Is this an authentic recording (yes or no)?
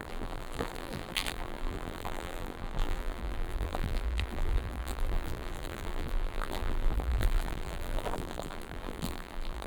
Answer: no